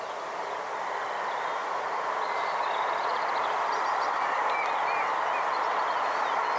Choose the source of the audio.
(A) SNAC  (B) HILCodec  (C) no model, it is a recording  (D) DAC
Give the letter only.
C